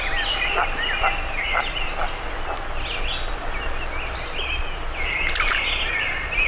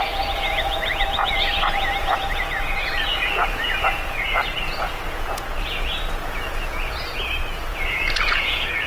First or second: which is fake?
second